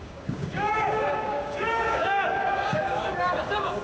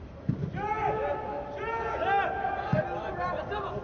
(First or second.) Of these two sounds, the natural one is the second